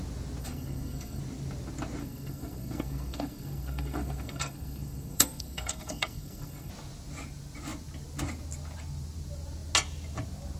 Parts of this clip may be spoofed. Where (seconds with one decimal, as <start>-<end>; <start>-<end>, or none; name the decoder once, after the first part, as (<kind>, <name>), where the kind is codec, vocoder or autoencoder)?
0.4-1.2 (codec, SNAC); 2.0-6.7